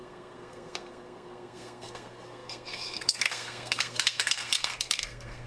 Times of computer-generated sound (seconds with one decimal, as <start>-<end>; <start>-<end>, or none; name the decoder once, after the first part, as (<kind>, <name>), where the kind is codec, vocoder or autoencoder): 0.0-5.5 (codec, SNAC)